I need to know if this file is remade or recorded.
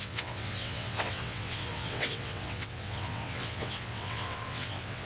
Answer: remade